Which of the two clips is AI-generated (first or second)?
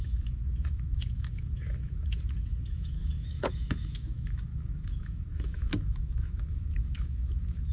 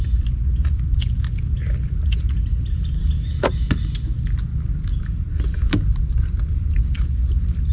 first